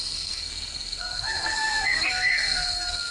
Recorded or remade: remade